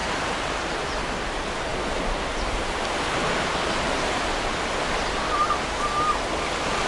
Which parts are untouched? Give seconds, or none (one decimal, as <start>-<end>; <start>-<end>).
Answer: 0.0-6.9